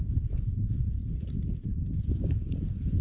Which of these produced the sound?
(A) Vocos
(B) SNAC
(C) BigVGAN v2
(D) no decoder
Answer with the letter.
C